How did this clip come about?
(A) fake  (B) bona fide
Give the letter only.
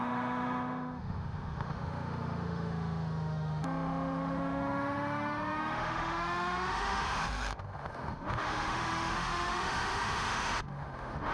A